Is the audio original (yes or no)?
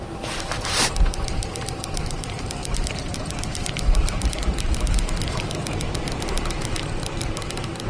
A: no